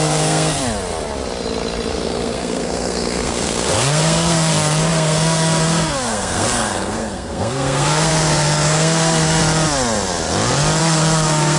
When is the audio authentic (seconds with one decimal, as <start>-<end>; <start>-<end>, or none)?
0.6-1.9; 9.4-10.8